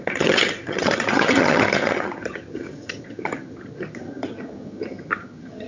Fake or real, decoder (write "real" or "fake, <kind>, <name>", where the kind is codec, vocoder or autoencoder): fake, vocoder, HiFi-GAN